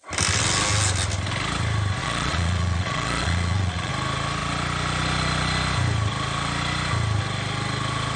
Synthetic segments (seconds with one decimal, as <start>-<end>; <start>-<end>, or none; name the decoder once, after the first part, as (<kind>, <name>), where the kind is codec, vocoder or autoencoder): 2.0-3.9 (vocoder, Vocos)